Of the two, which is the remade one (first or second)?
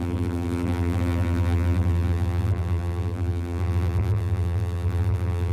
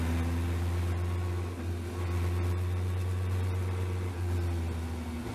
first